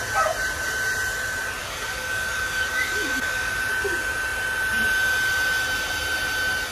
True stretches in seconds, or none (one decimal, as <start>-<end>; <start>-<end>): 0.0-1.6; 3.5-6.7